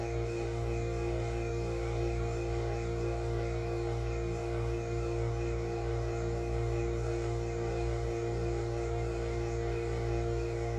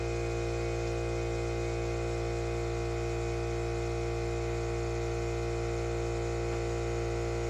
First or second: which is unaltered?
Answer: second